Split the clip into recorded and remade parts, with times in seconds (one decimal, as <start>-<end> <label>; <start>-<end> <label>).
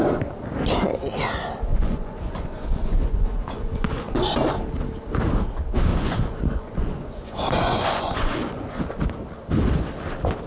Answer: 0.0-1.7 recorded; 1.7-4.6 remade; 4.6-5.9 recorded; 5.9-8.8 remade; 8.8-10.5 recorded